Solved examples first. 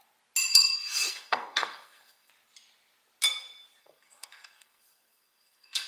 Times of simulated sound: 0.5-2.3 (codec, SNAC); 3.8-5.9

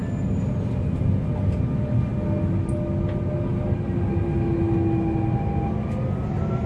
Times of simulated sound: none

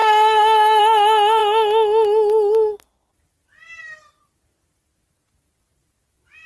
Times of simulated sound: 0.0-0.8 (codec, SNAC)

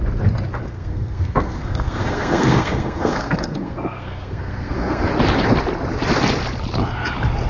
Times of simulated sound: 0.6-5.1 (codec, SNAC)

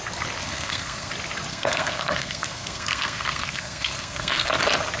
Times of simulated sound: 0.4-1.1 (codec, SNAC); 1.5-4.5

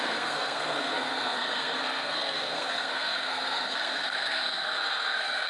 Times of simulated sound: 0.0-5.5 (codec, SNAC)

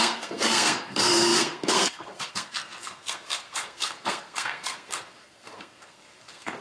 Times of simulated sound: 0.0-6.6 (codec, SNAC)